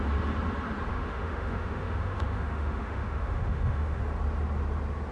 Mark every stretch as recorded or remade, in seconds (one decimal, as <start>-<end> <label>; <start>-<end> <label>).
0.0-0.9 recorded; 0.9-4.0 remade; 4.0-5.1 recorded